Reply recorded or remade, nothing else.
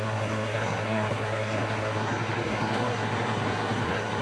remade